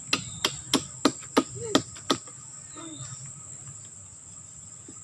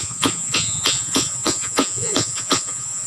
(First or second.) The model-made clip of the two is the second